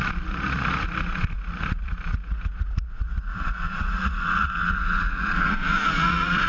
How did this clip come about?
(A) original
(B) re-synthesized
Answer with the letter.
B